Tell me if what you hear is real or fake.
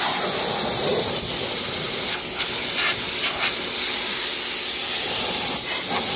real